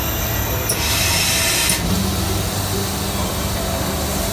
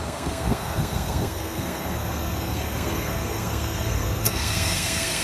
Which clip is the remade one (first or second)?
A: second